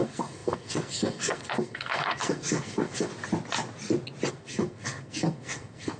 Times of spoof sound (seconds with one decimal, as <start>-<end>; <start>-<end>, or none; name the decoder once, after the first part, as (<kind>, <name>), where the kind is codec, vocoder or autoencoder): 0.0-3.1 (codec, SNAC); 4.3-6.0